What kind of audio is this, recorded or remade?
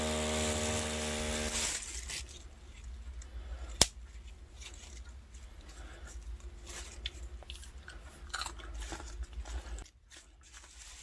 recorded